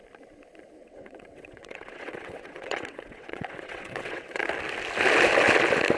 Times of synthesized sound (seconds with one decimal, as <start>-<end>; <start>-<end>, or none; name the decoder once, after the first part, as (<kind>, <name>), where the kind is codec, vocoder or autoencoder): 0.8-4.4 (vocoder, WaveNeXt)